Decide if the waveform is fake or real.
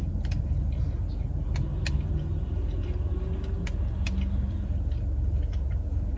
real